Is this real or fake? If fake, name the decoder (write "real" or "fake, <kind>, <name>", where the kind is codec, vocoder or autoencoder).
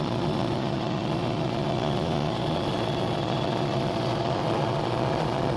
fake, vocoder, Vocos